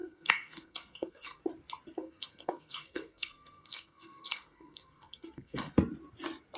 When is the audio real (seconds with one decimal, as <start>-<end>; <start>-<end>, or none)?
1.4-2.0; 5.7-6.6

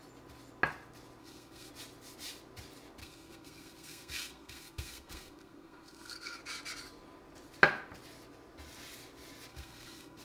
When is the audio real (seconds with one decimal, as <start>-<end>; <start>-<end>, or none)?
0.0-1.2; 1.7-3.0; 6.4-9.5

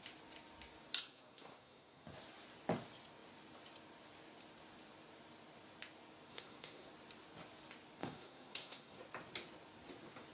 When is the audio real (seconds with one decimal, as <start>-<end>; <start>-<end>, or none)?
0.0-1.0; 2.2-6.3; 6.9-8.0; 9.0-10.3

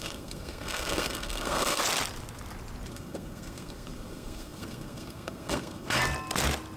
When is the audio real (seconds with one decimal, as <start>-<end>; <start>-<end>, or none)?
1.8-2.9; 6.0-6.8